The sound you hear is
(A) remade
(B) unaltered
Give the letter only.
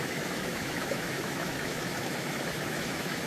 A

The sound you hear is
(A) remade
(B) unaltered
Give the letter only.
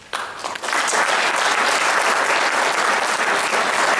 B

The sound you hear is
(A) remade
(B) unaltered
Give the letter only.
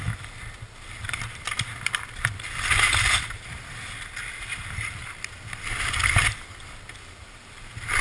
B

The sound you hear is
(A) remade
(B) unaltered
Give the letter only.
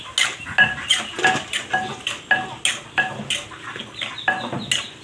B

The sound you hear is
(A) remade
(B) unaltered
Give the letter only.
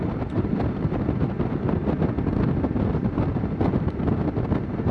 B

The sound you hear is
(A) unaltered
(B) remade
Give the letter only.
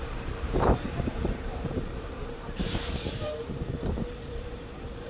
B